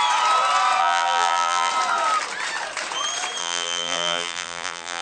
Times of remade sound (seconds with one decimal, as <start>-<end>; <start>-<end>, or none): 0.8-1.7; 3.4-5.0